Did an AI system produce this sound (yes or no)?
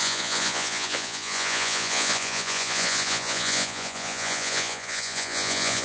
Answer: yes